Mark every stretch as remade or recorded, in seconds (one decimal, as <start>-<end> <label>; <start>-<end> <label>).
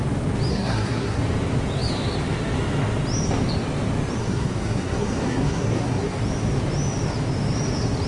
0.0-0.5 recorded; 0.5-1.2 remade; 1.2-4.2 recorded; 4.2-6.2 remade; 6.2-8.1 recorded